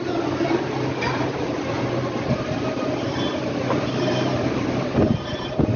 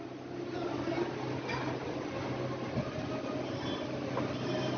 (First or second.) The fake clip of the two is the first